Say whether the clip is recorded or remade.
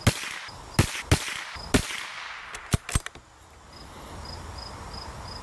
recorded